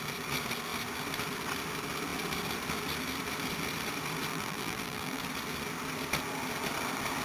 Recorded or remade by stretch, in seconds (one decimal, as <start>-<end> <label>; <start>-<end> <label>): 0.0-4.3 recorded; 4.3-5.2 remade; 5.2-7.2 recorded